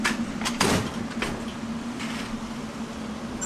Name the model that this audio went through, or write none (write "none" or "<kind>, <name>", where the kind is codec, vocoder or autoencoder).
none